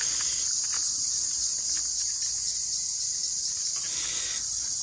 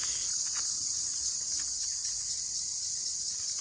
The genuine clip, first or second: first